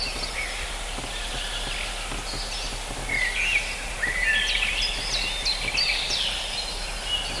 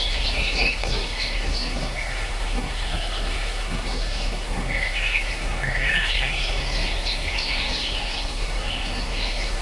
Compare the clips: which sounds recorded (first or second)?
first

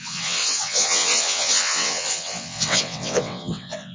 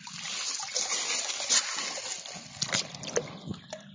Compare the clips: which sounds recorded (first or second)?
second